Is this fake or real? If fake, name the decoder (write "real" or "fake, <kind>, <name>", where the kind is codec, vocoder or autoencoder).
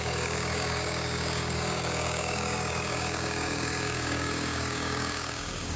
fake, codec, DAC